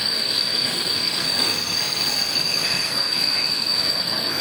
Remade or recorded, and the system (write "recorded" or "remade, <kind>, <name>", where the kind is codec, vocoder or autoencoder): remade, codec, SNAC